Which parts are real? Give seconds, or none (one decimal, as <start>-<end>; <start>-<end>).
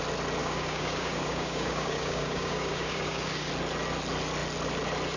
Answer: 0.0-0.4; 3.5-5.2